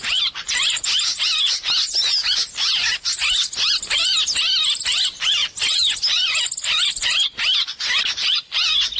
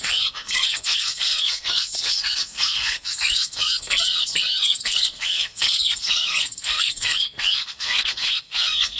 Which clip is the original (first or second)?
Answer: first